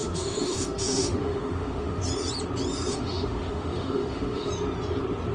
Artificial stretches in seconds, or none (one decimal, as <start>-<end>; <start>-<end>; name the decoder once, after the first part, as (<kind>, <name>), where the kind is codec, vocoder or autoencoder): 0.0-2.0 (autoencoder, DAC-VAE); 2.9-4.5